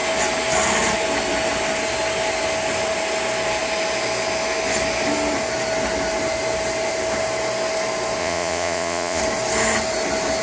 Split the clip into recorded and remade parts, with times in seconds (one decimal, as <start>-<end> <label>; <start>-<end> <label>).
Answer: 0.0-8.2 recorded; 8.2-9.2 remade; 9.2-10.4 recorded